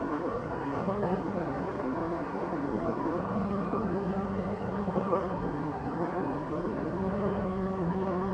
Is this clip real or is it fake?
fake